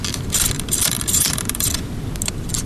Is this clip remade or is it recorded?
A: recorded